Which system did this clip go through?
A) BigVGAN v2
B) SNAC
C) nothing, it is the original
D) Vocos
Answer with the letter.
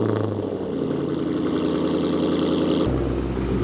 C